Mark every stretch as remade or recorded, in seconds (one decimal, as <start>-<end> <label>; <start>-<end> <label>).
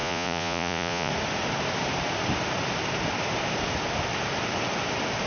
0.0-1.1 remade; 1.1-5.3 recorded